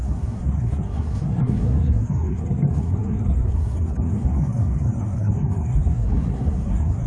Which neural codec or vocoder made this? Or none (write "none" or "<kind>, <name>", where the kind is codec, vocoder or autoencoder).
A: codec, SNAC